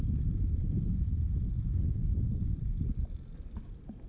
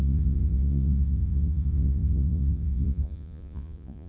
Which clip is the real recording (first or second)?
first